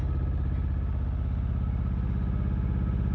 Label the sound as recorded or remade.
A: recorded